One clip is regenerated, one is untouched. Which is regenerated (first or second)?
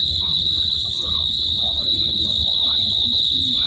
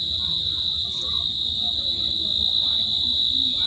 first